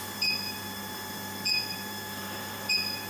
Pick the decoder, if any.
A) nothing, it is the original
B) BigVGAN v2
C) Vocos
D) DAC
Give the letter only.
B